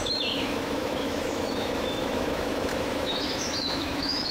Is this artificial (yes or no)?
yes